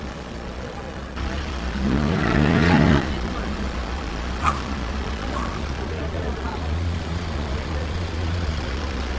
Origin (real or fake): fake